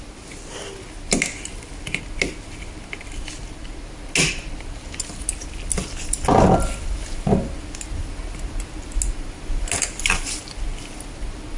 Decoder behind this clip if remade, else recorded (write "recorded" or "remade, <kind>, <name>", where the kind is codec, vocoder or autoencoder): recorded